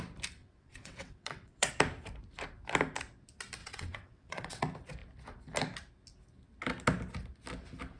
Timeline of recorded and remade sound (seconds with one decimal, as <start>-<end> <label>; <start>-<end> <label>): 0.0-0.4 recorded; 0.4-1.7 remade; 1.7-3.6 recorded; 3.6-4.6 remade; 4.6-8.0 recorded

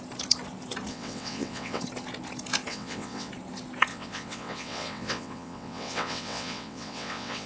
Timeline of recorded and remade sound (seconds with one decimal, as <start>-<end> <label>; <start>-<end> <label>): 0.0-0.9 recorded; 0.9-1.8 remade; 1.8-2.7 recorded; 2.7-3.3 remade; 3.3-3.9 recorded; 3.9-7.5 remade

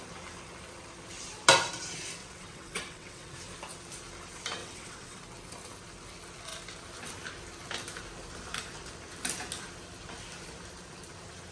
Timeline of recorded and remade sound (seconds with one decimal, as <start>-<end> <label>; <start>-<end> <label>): 0.0-2.2 recorded; 2.2-3.3 remade; 3.3-4.6 recorded; 4.6-5.2 remade; 5.2-11.5 recorded

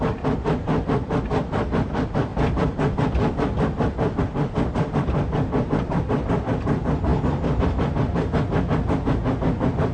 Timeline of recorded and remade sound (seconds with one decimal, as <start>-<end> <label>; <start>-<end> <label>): 0.0-9.9 recorded

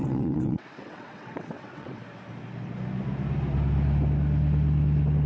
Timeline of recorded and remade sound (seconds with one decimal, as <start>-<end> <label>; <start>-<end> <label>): 0.0-2.0 remade; 2.0-5.3 recorded

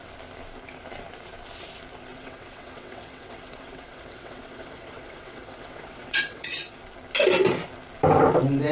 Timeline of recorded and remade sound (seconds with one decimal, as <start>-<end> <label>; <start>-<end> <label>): 0.0-2.1 recorded; 2.1-6.8 remade; 6.8-8.7 recorded

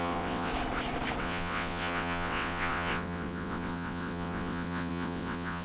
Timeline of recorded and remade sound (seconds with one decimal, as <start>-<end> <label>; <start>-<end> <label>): 0.0-0.5 remade; 0.5-1.2 recorded; 1.2-5.6 remade

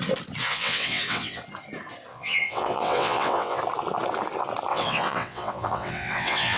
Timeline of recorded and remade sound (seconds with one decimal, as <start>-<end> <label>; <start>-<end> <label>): 0.0-0.4 recorded; 0.4-1.4 remade; 1.4-2.1 recorded; 2.1-3.6 remade; 3.6-4.7 recorded; 4.7-6.6 remade